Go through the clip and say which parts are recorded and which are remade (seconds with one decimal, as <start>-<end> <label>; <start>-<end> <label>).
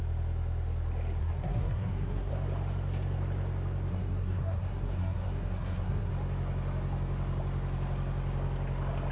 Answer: 0.0-1.2 recorded; 1.2-2.3 remade; 2.3-3.9 recorded; 3.9-6.1 remade; 6.1-9.1 recorded